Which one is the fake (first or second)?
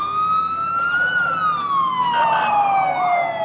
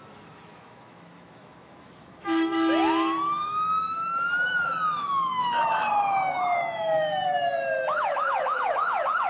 second